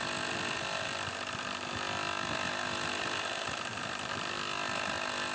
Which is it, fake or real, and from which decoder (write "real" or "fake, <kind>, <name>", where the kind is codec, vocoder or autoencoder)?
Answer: real